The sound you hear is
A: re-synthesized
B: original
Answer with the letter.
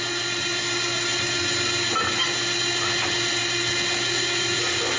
B